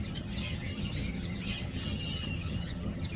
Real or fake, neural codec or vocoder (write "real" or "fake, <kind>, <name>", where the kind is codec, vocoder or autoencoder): fake, vocoder, HiFi-GAN